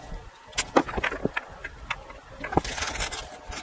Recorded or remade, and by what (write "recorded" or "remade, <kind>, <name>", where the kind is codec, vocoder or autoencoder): recorded